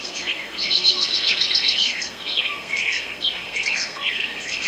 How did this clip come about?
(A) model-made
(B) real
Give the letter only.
A